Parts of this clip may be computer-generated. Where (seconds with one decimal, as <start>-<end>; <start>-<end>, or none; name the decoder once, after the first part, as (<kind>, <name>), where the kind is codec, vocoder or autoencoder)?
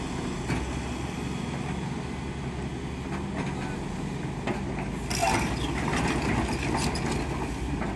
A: none